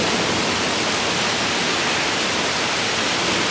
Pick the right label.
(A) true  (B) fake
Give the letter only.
A